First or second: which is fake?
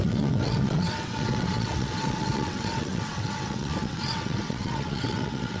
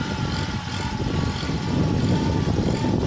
first